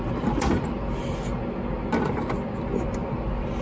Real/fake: real